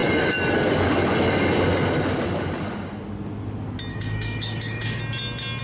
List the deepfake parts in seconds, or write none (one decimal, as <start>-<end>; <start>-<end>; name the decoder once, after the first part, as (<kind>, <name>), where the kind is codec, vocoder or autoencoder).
3.9-5.0 (codec, DAC)